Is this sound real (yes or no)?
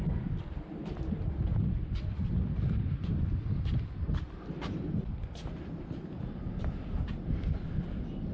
no